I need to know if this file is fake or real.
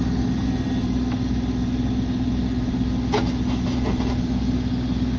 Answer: real